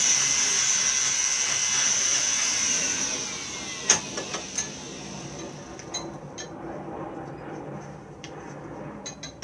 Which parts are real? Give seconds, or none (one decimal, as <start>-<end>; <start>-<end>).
0.0-2.1; 3.1-6.2; 8.6-9.4